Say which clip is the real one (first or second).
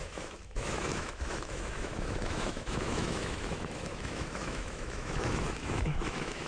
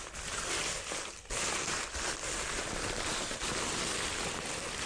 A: second